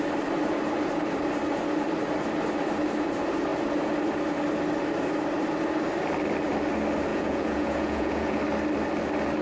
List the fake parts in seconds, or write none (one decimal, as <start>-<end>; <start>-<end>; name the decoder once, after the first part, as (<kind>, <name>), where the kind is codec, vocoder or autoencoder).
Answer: 7.1-8.4 (vocoder, Vocos)